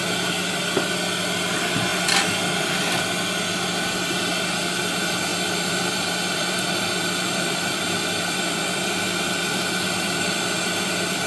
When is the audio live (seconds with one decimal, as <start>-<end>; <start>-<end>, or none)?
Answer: 0.0-5.3; 10.5-11.3